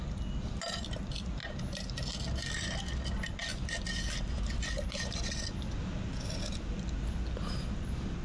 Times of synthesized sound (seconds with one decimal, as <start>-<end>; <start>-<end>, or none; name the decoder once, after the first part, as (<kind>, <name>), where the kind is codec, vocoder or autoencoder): none